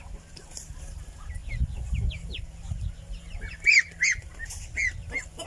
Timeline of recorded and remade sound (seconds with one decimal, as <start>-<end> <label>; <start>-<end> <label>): 0.0-5.5 recorded